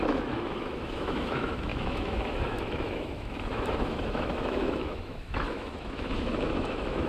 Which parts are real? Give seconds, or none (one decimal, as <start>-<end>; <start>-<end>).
none